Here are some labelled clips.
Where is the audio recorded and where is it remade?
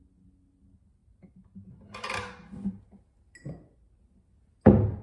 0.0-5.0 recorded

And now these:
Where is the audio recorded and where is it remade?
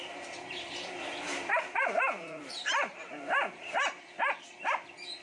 0.0-1.3 recorded; 1.3-4.4 remade; 4.4-5.2 recorded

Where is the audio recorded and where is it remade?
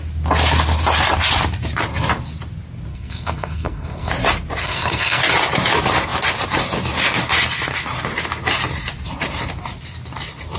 0.0-2.9 recorded; 2.9-4.1 remade; 4.1-4.6 recorded; 4.6-5.2 remade; 5.2-10.6 recorded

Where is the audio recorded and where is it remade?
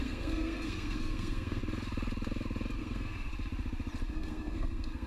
0.0-1.6 remade; 1.6-2.8 recorded; 2.8-3.3 remade; 3.3-4.1 recorded; 4.1-5.1 remade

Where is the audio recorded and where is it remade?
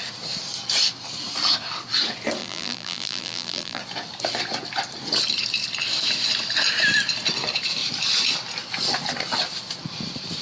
0.0-2.4 recorded; 2.4-3.8 remade; 3.8-10.4 recorded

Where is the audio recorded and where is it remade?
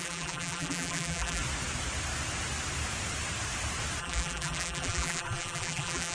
0.0-1.4 remade; 1.4-4.0 recorded; 4.0-6.1 remade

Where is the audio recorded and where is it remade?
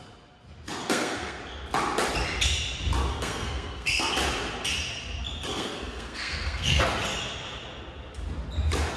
0.0-0.8 recorded; 0.8-1.4 remade; 1.4-3.1 recorded; 3.1-4.1 remade; 4.1-5.5 recorded; 5.5-6.8 remade; 6.8-9.0 recorded